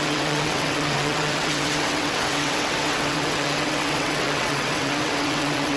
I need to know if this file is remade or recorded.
remade